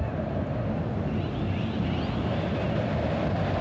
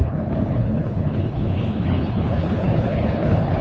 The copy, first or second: second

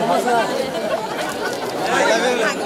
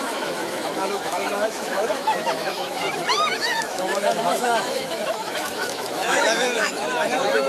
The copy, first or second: second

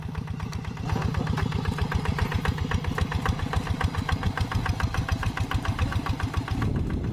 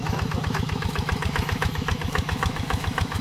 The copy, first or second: second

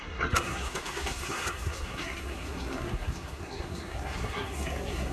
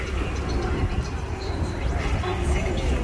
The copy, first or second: first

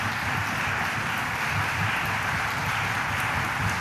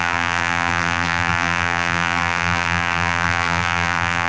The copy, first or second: second